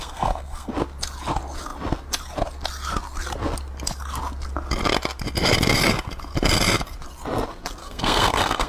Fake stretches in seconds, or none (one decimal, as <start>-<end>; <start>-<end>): 0.0-0.7; 7.8-8.7